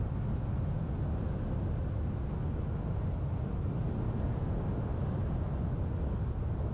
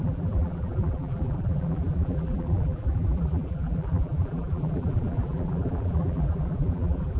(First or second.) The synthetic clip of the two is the second